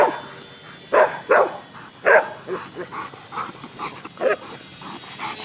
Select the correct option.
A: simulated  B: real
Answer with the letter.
B